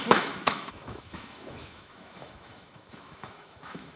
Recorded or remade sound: remade